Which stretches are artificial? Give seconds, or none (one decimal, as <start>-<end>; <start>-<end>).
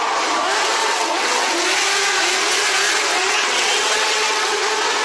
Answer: 0.8-1.5; 3.1-4.6